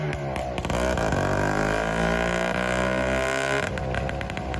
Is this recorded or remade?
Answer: recorded